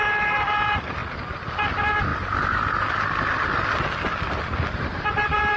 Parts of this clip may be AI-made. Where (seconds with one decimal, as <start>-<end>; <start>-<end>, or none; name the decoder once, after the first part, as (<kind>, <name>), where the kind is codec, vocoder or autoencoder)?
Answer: none